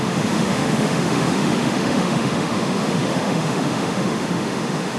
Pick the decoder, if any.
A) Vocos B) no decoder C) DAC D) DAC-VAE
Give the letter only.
D